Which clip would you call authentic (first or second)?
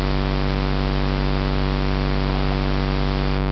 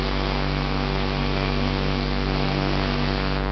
first